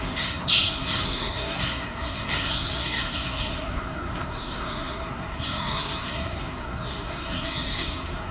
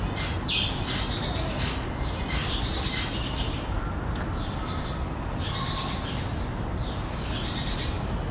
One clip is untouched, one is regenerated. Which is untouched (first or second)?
second